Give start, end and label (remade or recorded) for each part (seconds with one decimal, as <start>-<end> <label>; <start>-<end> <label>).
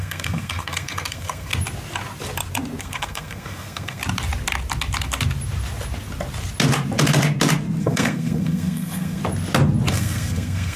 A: 0.0-1.5 remade; 1.5-2.8 recorded; 2.8-4.0 remade; 4.0-7.8 recorded; 7.8-9.2 remade; 9.2-9.9 recorded; 9.9-10.8 remade